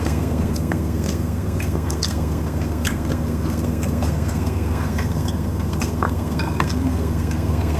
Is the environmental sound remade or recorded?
remade